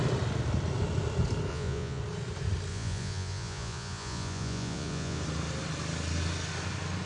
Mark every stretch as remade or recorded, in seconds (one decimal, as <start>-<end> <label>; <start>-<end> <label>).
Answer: 0.0-1.5 recorded; 1.5-2.0 remade; 2.0-2.7 recorded; 2.7-5.2 remade; 5.2-7.1 recorded